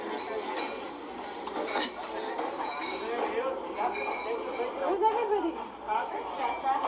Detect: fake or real real